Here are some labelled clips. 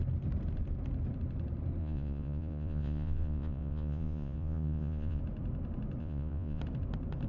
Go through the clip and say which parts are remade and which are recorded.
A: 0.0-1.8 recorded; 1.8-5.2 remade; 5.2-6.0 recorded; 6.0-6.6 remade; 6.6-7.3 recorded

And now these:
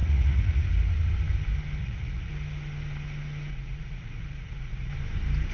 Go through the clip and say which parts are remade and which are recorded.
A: 0.0-0.6 remade; 0.6-1.8 recorded; 1.8-2.3 remade; 2.3-3.5 recorded; 3.5-4.9 remade; 4.9-5.5 recorded

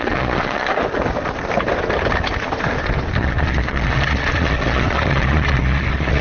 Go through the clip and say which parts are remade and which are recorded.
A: 0.0-0.7 remade; 0.7-3.2 recorded; 3.2-6.2 remade

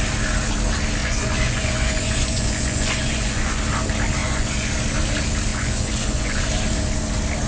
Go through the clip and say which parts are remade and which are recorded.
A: 0.0-1.0 recorded; 1.0-3.6 remade; 3.6-4.2 recorded; 4.2-4.7 remade; 4.7-5.5 recorded; 5.5-6.5 remade; 6.5-7.5 recorded

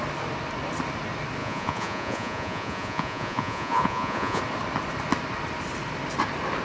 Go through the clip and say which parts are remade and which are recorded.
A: 0.0-1.4 recorded; 1.4-4.4 remade; 4.4-6.6 recorded